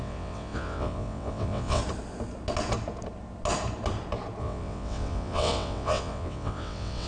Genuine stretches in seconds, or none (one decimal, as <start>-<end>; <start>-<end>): 1.8-4.4